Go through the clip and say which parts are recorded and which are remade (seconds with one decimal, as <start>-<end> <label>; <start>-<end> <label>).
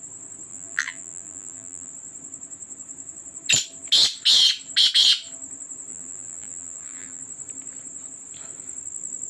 0.0-0.5 recorded; 0.5-1.9 remade; 1.9-5.9 recorded; 5.9-7.2 remade; 7.2-9.3 recorded